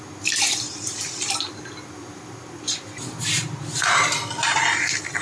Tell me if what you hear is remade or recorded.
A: remade